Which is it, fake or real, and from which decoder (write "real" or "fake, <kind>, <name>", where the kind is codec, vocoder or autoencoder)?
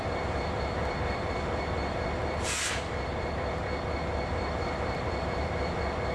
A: fake, vocoder, BigVGAN v2